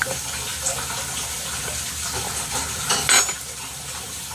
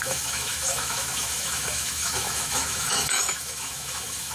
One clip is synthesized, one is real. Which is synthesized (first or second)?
second